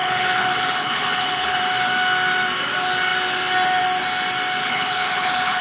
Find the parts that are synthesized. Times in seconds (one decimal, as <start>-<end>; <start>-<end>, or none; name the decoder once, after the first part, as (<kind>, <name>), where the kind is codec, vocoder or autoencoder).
0.0-1.6 (codec, HILCodec); 4.6-5.6